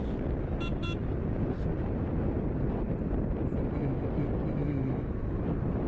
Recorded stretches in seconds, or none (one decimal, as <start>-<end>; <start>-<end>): 0.0-4.6; 5.4-5.9